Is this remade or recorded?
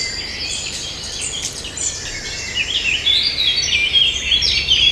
remade